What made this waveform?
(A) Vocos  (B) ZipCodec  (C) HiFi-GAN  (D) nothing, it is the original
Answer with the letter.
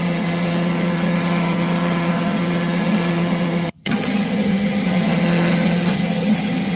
C